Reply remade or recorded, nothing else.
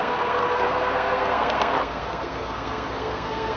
remade